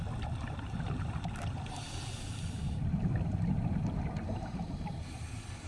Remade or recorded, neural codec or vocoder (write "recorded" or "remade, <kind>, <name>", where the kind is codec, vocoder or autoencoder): recorded